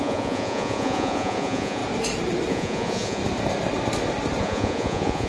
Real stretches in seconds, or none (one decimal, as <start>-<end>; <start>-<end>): 1.8-2.5; 3.2-4.4

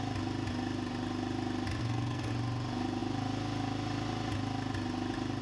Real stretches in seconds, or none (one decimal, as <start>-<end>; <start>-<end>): 0.0-1.8; 2.3-5.4